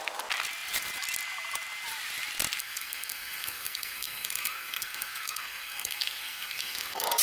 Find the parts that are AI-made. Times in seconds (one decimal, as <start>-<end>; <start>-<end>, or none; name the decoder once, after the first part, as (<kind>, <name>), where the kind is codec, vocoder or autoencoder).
2.6-7.2 (codec, SNAC)